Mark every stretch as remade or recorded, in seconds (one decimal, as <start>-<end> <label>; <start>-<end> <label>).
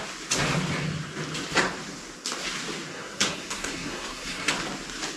0.0-2.9 recorded; 2.9-4.5 remade; 4.5-5.2 recorded